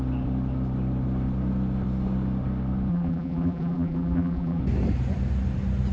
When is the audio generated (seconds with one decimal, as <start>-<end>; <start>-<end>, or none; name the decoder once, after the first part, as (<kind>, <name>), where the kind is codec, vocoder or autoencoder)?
2.9-4.6 (vocoder, BigVGAN v2)